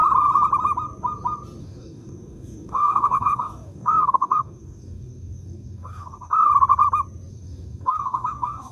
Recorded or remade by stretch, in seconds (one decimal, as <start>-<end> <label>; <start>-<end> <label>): 0.0-1.6 recorded; 1.6-6.5 remade; 6.5-7.3 recorded; 7.3-8.7 remade